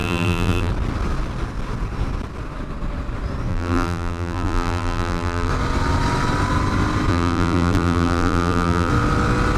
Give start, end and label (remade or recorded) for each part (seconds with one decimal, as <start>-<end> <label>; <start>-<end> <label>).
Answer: 0.0-0.7 remade; 0.7-3.5 recorded; 3.5-5.5 remade; 5.5-7.1 recorded; 7.1-8.9 remade; 8.9-9.6 recorded